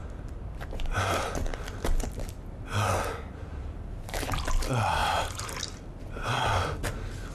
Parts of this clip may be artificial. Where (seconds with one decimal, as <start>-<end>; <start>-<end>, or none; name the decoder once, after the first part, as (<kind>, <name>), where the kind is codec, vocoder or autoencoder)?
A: 0.0-1.3 (vocoder, BigVGAN v2); 3.5-4.3